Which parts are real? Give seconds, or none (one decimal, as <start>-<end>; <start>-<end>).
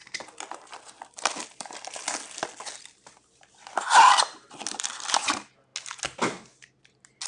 0.0-7.3